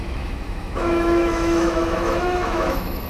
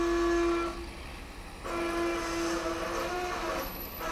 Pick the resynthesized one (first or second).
first